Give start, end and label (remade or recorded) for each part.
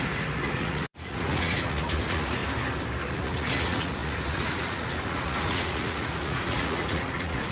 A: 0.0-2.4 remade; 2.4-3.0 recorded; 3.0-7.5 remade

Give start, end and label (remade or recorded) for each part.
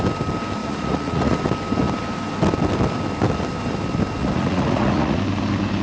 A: 0.0-0.6 recorded; 0.6-1.4 remade; 1.4-4.2 recorded; 4.2-5.2 remade; 5.2-5.8 recorded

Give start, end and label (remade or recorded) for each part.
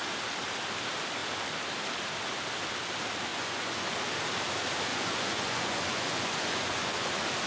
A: 0.0-3.3 recorded; 3.3-3.9 remade; 3.9-4.9 recorded; 4.9-7.1 remade; 7.1-7.5 recorded